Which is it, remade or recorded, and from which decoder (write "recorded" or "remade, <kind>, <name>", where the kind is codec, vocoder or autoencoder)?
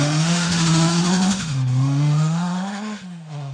remade, autoencoder, DAC-VAE